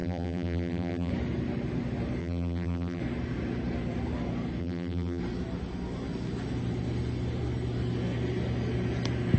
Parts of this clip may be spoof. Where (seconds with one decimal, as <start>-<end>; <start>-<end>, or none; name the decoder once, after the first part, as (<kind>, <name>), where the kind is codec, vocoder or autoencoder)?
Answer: 0.0-1.1 (vocoder, BigVGAN v2); 2.2-3.0; 4.6-5.2